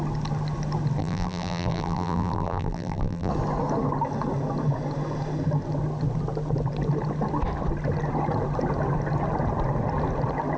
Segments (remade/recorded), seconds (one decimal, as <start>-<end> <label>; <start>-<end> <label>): 0.0-1.0 recorded; 1.0-3.3 remade; 3.3-10.6 recorded